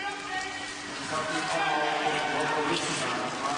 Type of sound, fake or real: real